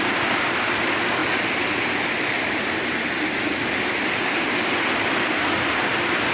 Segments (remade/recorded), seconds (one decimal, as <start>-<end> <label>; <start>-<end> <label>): 0.0-6.3 recorded